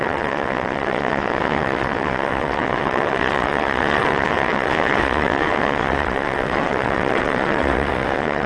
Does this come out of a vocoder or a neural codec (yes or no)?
yes